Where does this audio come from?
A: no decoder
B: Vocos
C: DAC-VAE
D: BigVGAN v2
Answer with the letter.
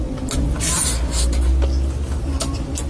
A